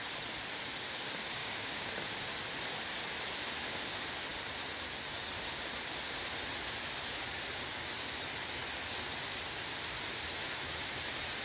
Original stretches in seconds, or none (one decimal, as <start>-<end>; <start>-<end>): 0.0-1.4; 1.9-11.4